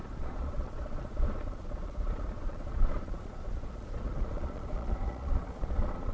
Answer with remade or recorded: remade